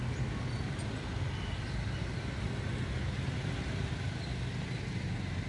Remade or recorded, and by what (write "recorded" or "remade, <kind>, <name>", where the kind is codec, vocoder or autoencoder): recorded